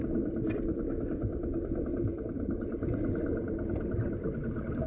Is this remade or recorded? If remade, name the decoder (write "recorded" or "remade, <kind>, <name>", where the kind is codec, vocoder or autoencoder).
recorded